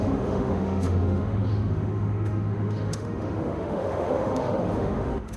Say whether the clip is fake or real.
fake